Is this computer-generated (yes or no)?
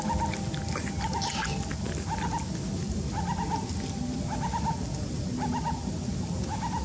no